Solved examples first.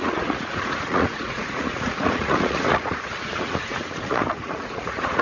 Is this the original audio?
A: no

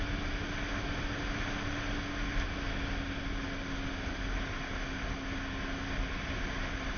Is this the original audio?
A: yes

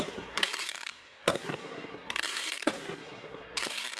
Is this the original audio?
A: no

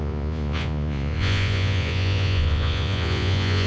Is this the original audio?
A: no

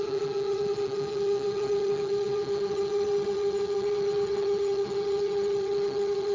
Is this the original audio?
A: no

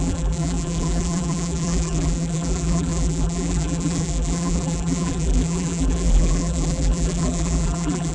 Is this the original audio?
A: no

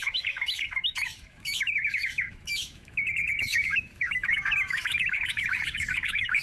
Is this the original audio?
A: no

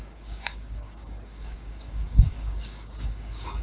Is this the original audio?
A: no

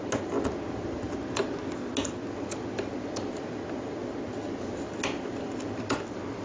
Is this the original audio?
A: yes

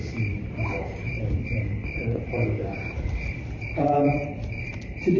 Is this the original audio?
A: no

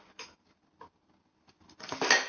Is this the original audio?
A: yes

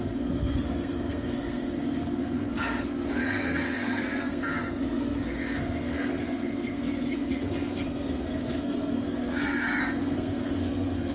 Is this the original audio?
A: no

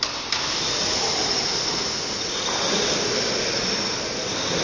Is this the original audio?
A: yes